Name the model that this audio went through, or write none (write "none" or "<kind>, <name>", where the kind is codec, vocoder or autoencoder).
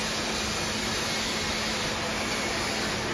none